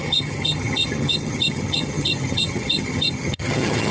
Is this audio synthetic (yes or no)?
yes